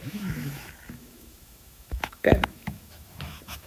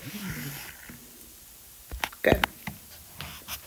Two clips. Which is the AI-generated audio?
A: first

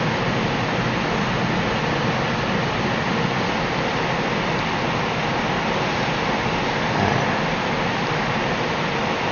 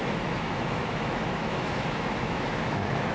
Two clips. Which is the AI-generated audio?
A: second